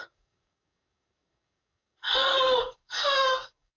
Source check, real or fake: fake